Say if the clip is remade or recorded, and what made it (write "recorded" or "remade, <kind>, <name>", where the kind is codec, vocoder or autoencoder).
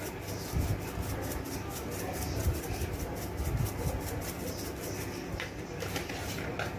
recorded